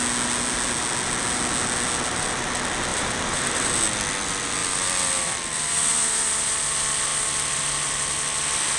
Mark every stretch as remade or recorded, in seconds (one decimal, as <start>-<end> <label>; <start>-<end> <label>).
0.0-2.9 recorded; 2.9-3.8 remade; 3.8-4.6 recorded; 4.6-5.8 remade; 5.8-7.1 recorded; 7.1-7.6 remade; 7.6-8.8 recorded